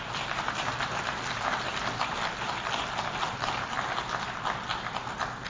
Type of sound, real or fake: real